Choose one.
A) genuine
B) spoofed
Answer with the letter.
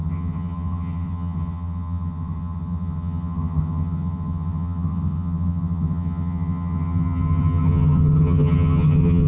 B